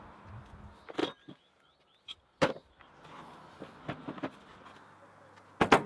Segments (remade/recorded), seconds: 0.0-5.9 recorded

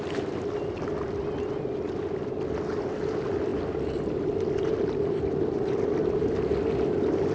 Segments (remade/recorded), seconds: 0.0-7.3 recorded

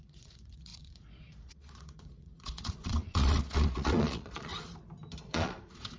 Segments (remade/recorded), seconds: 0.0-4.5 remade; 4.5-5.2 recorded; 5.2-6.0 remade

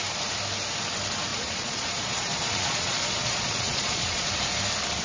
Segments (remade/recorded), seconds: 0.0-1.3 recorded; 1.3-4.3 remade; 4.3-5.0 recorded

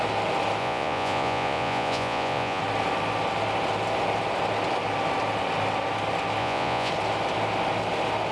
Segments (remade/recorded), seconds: 0.0-0.6 recorded; 0.6-2.6 remade; 2.6-6.4 recorded; 6.4-6.9 remade; 6.9-8.3 recorded

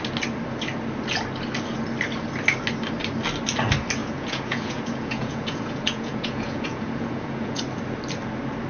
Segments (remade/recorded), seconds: 0.0-4.0 recorded; 4.0-7.6 remade; 7.6-8.7 recorded

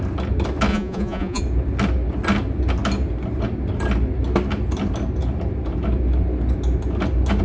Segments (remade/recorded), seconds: 0.0-0.7 recorded; 0.7-1.4 remade; 1.4-7.4 recorded

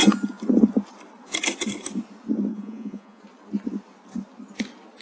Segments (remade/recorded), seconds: 0.0-2.5 recorded; 2.5-3.2 remade; 3.2-5.0 recorded